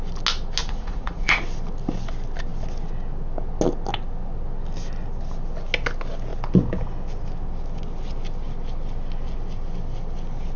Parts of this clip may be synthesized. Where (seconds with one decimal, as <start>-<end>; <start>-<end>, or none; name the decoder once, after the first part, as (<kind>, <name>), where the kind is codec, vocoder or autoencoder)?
0.6-1.4 (vocoder, Vocos)